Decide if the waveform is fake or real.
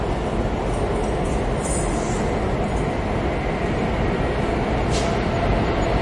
real